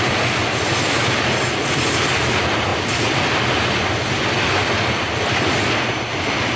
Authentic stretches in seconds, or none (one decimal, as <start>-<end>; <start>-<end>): 0.0-6.6